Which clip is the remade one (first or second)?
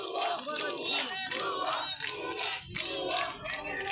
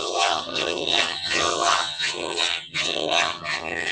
second